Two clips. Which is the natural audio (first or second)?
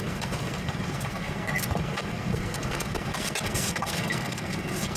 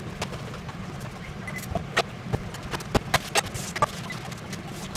second